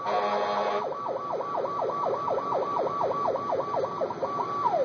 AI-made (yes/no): no